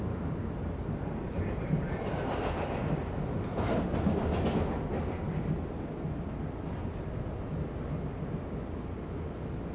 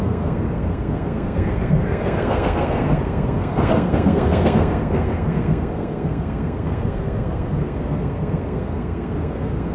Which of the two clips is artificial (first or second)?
second